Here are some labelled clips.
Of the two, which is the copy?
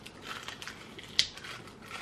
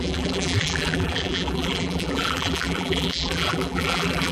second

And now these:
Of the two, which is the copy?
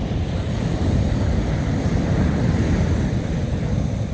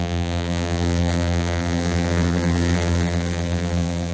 second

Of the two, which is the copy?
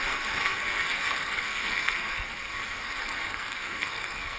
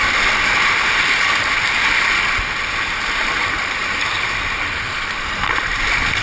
first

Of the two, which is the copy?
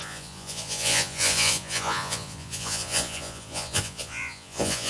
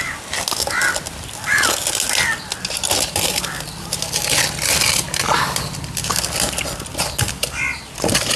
first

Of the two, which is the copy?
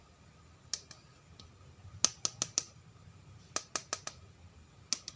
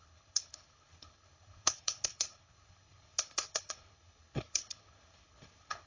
second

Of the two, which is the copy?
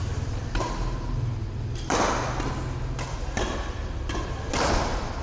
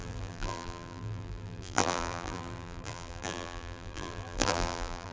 second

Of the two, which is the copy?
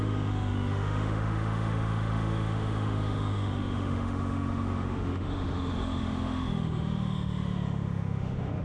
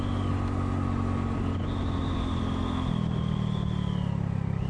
first